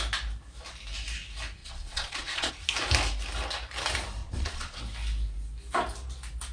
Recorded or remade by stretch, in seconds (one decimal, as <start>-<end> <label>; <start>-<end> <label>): 0.0-1.6 recorded; 1.6-2.5 remade; 2.5-4.2 recorded; 4.2-4.8 remade; 4.8-6.5 recorded